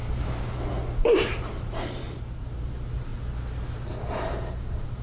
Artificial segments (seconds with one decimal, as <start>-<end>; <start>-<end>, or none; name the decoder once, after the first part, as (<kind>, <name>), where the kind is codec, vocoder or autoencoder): 1.0-3.1 (vocoder, BigVGAN v2); 4.0-5.0